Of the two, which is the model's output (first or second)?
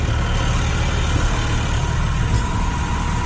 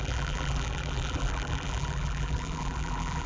second